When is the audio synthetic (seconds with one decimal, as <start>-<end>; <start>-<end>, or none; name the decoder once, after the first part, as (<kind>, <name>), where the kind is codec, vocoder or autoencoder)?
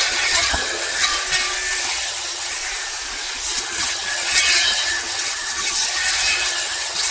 0.0-1.1 (vocoder, HiFi-GAN); 1.8-2.6; 3.6-7.1